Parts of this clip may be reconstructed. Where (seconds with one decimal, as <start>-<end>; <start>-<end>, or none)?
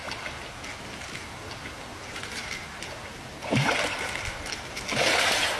none